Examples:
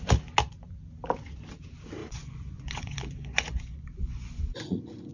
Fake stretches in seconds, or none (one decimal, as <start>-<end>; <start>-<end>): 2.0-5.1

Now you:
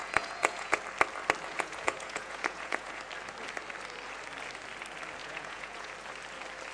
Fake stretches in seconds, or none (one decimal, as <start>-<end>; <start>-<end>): 0.0-0.8; 1.5-3.0; 5.2-5.9

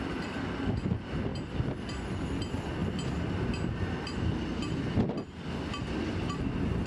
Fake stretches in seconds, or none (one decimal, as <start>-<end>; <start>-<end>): none

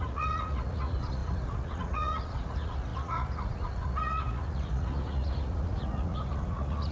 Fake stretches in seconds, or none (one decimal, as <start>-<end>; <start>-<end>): 0.0-6.9